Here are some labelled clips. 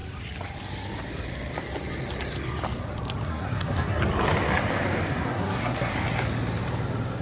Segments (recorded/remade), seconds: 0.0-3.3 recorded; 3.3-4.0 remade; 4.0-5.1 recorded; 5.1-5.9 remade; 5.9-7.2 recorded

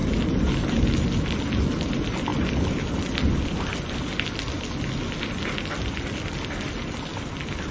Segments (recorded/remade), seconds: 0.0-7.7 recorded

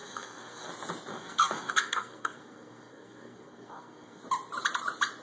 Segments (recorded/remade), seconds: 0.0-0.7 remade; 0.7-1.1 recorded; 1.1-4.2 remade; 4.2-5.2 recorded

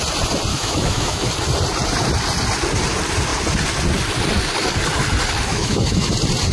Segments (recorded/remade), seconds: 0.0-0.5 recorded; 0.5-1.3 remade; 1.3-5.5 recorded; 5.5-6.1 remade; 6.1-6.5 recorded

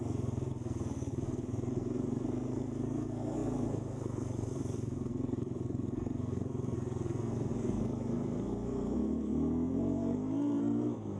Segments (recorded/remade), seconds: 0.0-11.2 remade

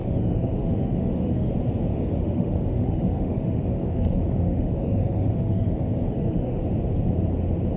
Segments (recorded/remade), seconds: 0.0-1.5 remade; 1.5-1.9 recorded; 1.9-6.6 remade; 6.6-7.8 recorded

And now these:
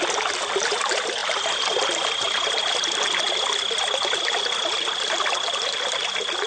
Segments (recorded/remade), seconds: 0.0-6.5 recorded